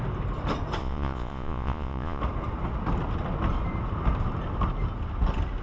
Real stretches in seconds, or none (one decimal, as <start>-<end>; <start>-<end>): 0.0-0.8; 2.2-5.6